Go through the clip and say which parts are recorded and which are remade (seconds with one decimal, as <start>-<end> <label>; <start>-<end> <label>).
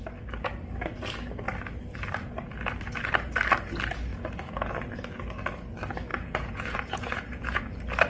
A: 0.0-4.1 recorded; 4.1-4.7 remade; 4.7-6.1 recorded; 6.1-7.6 remade; 7.6-8.1 recorded